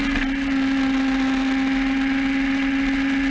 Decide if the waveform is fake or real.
real